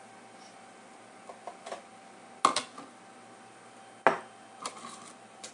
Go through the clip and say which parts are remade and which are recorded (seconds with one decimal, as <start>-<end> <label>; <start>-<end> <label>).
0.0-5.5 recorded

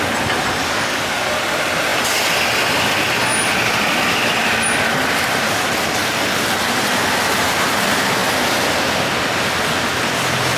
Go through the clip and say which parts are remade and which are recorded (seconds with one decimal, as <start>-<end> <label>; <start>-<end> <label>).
0.0-0.6 recorded; 0.6-1.3 remade; 1.3-10.6 recorded

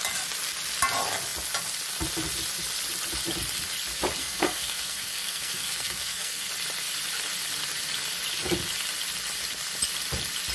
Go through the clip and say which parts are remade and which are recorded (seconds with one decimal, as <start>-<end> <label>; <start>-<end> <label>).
0.0-4.2 recorded; 4.2-6.5 remade; 6.5-10.5 recorded